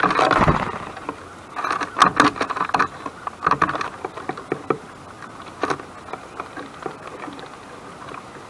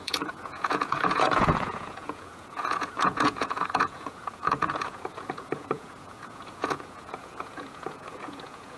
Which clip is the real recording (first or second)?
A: first